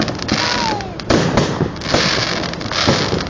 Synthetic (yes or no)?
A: no